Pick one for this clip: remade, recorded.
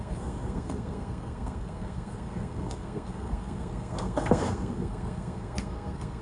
remade